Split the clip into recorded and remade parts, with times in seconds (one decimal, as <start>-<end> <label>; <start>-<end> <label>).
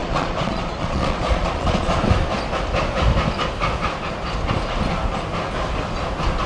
0.0-1.9 remade; 1.9-6.5 recorded